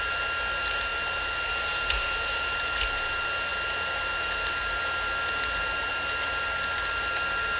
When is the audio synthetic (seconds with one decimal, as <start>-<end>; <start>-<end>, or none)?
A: none